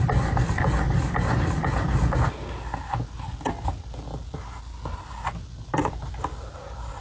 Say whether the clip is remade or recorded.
recorded